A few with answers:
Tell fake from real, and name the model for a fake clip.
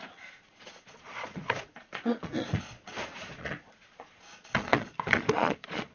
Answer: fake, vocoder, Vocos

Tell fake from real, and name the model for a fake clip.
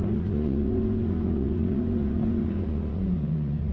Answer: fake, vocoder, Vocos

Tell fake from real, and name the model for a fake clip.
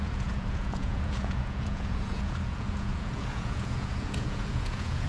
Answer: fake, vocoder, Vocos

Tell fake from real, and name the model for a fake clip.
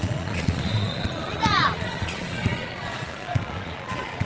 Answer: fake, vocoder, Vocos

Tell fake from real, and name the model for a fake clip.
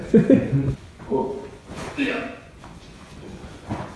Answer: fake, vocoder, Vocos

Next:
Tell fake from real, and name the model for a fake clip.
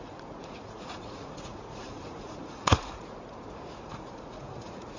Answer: fake, vocoder, Vocos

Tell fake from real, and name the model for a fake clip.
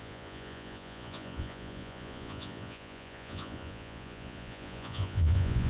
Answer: fake, vocoder, Vocos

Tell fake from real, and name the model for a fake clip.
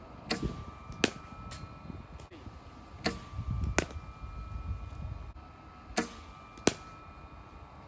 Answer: real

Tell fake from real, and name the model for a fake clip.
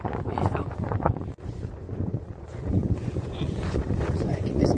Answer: fake, vocoder, Vocos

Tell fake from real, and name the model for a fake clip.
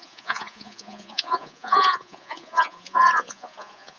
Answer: fake, vocoder, Vocos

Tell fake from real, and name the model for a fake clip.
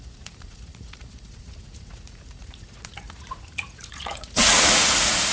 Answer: fake, vocoder, Vocos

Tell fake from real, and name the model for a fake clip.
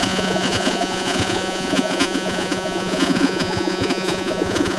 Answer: fake, vocoder, Vocos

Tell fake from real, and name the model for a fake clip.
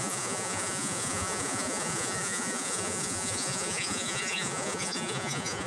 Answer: fake, vocoder, Vocos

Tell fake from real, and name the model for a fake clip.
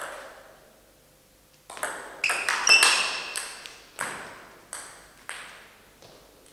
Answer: real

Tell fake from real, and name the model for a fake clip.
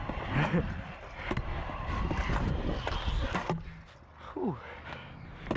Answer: real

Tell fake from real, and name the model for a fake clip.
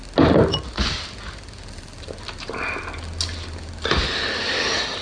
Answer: real